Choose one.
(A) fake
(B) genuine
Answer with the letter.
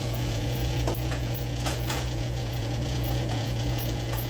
A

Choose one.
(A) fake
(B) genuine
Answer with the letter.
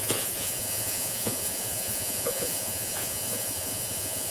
A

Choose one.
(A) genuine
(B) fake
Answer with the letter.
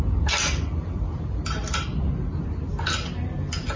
A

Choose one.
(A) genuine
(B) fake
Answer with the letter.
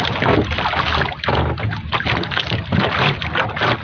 A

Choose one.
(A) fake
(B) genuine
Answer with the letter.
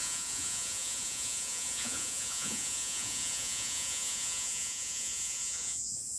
A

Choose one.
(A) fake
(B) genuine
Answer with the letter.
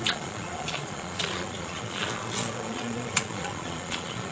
A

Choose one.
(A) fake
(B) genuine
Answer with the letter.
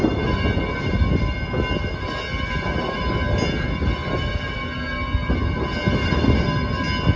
B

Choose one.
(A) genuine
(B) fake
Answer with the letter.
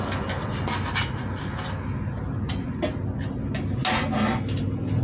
A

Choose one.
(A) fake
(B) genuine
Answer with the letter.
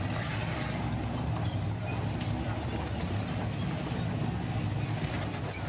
B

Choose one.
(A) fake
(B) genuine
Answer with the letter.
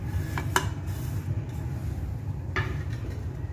B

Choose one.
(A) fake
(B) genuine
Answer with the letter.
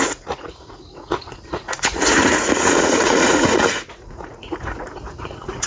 A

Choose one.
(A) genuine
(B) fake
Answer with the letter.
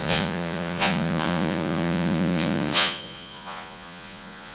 B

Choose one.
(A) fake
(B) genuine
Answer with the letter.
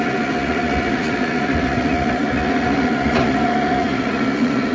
A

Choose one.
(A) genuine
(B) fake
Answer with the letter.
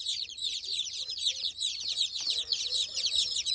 B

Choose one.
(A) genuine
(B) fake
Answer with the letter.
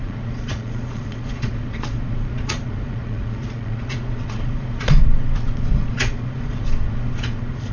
B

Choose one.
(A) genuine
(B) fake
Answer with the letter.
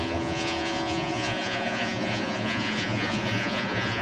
B